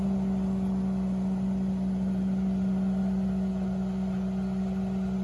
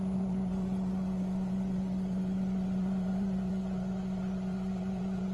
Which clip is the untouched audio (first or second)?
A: first